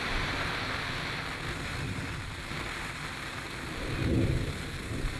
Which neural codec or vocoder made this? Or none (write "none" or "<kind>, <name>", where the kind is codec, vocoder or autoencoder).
none